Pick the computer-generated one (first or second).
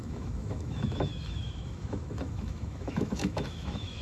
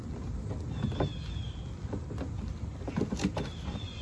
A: first